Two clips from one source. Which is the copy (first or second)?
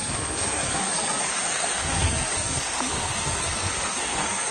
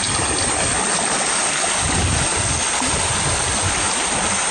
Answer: first